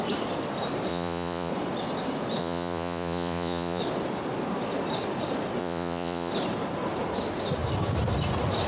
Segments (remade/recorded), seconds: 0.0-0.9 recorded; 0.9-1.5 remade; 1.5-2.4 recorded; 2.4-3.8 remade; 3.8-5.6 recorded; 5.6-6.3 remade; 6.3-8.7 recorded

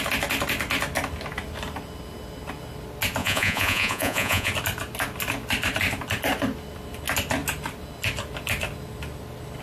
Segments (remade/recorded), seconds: 0.0-3.2 recorded; 3.2-4.5 remade; 4.5-9.6 recorded

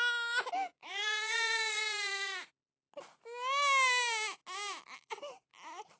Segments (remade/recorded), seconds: 0.0-0.8 recorded; 0.8-2.5 remade; 2.5-6.0 recorded

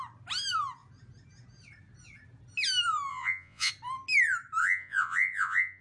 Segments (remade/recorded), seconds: 0.0-3.1 recorded; 3.1-3.7 remade; 3.7-4.6 recorded; 4.6-5.8 remade